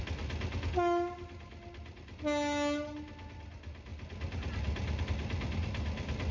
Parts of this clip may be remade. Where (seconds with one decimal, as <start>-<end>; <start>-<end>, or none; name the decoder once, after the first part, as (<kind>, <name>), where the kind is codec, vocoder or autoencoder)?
none